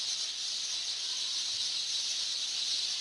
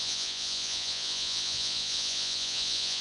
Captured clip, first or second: first